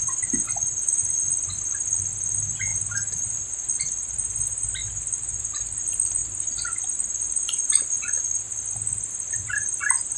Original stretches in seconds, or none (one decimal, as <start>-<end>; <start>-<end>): 0.0-10.2